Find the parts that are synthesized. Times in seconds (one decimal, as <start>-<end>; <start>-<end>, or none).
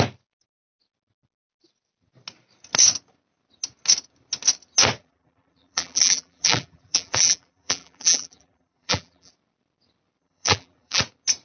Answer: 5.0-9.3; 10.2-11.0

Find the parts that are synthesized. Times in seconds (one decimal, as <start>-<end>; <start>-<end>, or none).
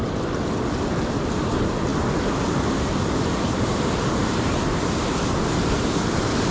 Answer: 1.9-5.8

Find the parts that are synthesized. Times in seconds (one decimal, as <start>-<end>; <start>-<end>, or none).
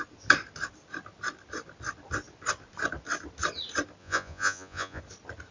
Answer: 4.0-5.0